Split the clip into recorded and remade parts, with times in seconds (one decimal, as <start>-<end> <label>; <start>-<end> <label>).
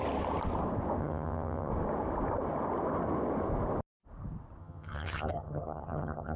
0.0-1.0 recorded; 1.0-1.7 remade; 1.7-4.6 recorded; 4.6-6.4 remade